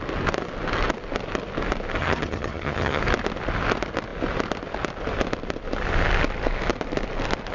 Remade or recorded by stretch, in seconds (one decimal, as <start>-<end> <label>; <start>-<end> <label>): 0.0-2.0 recorded; 2.0-3.0 remade; 3.0-7.5 recorded